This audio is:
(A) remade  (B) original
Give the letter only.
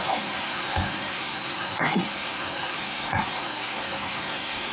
A